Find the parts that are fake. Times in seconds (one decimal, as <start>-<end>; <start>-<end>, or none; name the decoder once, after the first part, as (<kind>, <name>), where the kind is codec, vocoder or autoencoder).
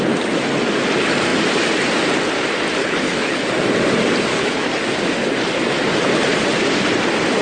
2.8-3.5 (codec, HILCodec); 4.3-4.8